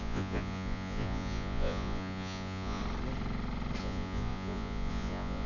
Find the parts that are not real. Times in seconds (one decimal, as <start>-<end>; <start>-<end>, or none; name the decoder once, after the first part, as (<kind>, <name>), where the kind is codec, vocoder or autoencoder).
0.0-2.8 (vocoder, Vocos); 3.8-5.5